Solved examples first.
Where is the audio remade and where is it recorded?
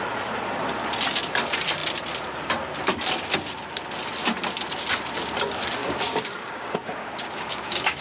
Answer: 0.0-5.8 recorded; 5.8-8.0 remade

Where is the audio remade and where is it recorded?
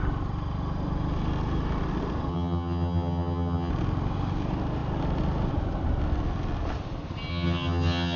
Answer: 0.0-2.3 recorded; 2.3-3.7 remade; 3.7-7.3 recorded; 7.3-8.2 remade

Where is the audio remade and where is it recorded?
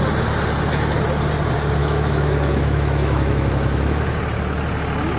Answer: 0.0-1.8 recorded; 1.8-4.0 remade; 4.0-5.2 recorded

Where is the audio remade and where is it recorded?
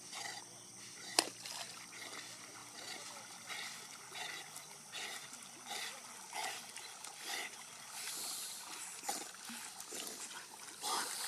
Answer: 0.0-11.3 recorded